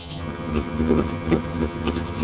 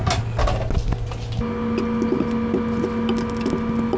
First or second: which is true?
second